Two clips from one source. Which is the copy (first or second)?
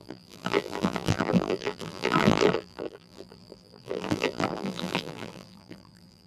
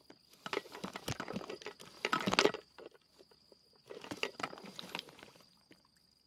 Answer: first